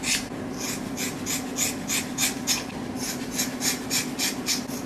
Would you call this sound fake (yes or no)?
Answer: no